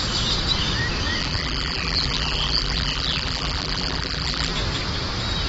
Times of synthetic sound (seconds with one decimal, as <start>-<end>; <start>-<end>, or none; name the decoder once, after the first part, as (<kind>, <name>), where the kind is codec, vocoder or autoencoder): 1.2-4.5 (vocoder, BigVGAN v2)